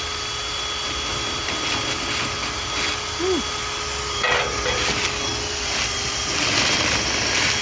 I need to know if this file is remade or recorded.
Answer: recorded